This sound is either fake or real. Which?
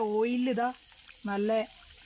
real